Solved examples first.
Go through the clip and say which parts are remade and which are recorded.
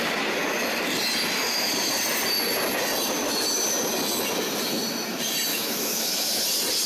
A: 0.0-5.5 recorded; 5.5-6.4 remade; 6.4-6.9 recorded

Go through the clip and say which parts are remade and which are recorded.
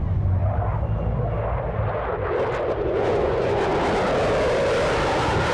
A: 0.0-0.4 remade; 0.4-2.8 recorded; 2.8-3.7 remade; 3.7-5.5 recorded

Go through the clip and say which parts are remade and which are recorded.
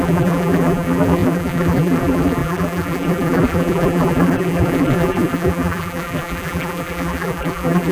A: 0.0-7.9 remade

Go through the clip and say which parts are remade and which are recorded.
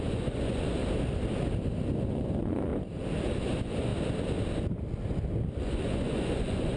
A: 0.0-0.8 remade; 0.8-2.1 recorded; 2.1-2.7 remade; 2.7-3.4 recorded; 3.4-3.9 remade; 3.9-5.6 recorded; 5.6-6.8 remade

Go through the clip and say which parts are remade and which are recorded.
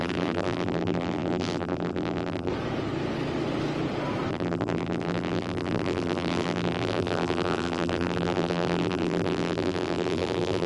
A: 0.0-2.5 remade; 2.5-4.3 recorded; 4.3-10.7 remade